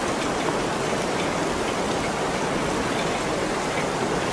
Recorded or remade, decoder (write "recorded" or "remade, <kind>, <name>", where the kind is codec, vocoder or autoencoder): remade, vocoder, BigVGAN v2